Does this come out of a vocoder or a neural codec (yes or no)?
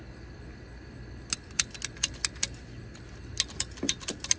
no